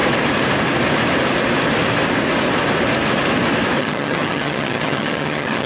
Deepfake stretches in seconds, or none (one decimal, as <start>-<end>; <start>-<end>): 3.8-5.7